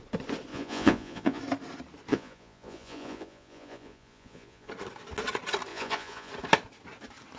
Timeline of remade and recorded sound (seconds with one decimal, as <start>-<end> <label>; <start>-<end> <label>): 0.0-0.5 recorded; 0.5-1.4 remade; 1.4-2.1 recorded; 2.1-4.7 remade; 4.7-5.7 recorded; 5.7-6.3 remade; 6.3-7.4 recorded